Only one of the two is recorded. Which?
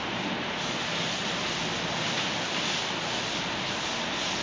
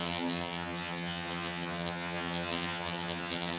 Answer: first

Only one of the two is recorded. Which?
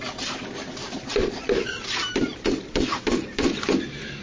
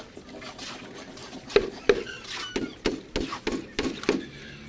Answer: second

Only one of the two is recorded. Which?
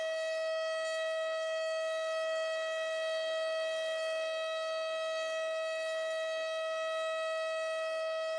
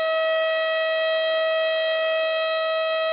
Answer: second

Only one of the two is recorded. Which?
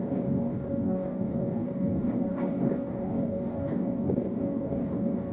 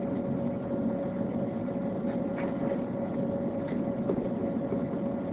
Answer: second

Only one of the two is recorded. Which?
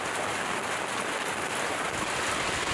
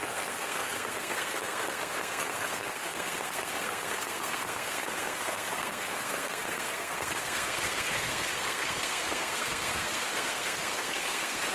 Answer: first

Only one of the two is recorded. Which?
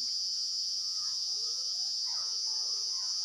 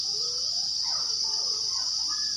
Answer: second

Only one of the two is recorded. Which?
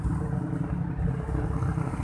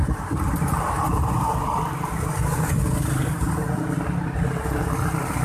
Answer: first